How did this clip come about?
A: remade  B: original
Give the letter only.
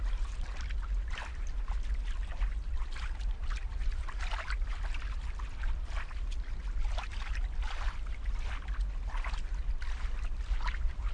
B